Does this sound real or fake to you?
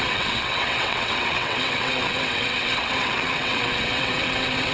fake